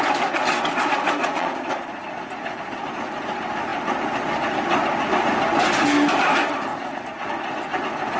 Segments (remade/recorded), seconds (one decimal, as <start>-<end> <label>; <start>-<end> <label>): 0.0-1.2 recorded; 1.2-2.2 remade; 2.2-6.7 recorded; 6.7-7.3 remade; 7.3-8.2 recorded